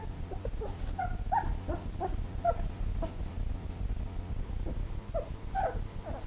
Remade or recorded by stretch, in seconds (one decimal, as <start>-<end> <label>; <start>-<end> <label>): 0.0-6.3 recorded